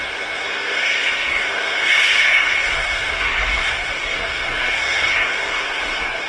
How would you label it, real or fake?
fake